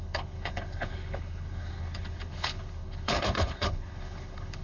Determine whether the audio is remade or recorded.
remade